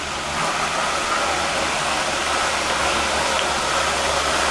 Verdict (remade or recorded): recorded